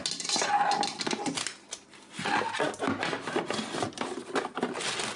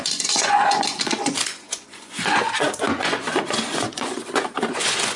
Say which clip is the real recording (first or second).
first